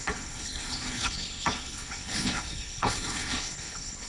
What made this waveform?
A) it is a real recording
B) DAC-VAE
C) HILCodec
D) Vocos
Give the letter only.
C